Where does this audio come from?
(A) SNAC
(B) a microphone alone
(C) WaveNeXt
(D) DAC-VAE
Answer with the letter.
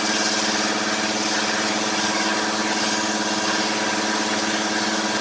B